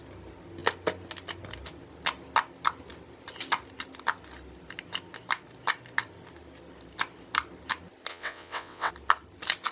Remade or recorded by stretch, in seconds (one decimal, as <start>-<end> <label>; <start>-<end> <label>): 0.0-8.1 recorded; 8.1-8.9 remade; 8.9-9.7 recorded